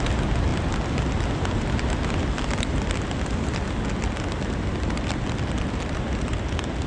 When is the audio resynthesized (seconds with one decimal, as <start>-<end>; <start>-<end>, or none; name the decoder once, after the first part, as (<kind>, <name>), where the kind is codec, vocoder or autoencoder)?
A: none